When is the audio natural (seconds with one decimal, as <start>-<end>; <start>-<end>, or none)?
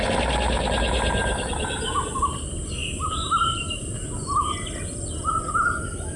0.0-6.2